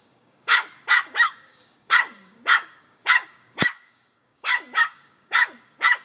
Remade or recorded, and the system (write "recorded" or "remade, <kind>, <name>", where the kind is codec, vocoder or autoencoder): remade, codec, DAC